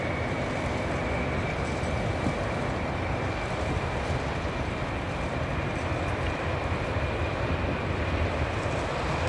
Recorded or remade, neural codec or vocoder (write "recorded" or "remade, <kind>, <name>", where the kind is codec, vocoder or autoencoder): remade, vocoder, BigVGAN v2